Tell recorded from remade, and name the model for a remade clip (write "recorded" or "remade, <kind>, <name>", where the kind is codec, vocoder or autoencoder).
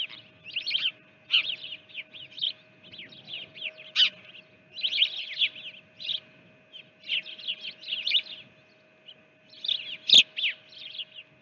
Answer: recorded